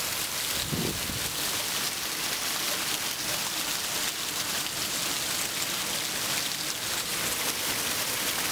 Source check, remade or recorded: recorded